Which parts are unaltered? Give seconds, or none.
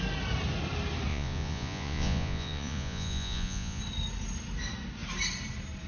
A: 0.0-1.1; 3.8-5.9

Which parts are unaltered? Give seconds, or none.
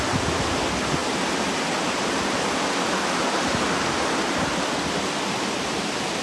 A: 0.0-6.2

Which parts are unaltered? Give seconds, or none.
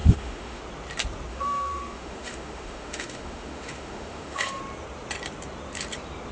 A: 0.6-1.3; 4.6-6.3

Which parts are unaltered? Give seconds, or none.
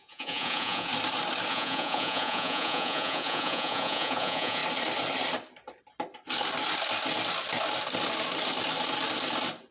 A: 0.9-1.5; 4.6-9.7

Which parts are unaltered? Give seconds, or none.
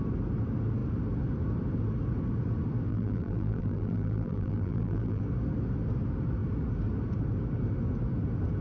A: 0.0-2.9; 5.2-8.6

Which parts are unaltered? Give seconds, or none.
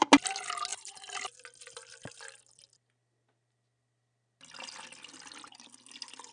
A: 0.0-6.3